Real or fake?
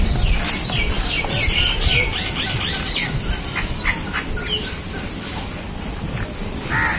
real